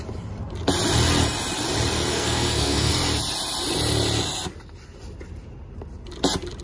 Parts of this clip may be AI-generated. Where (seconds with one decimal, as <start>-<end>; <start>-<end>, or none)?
2.1-2.9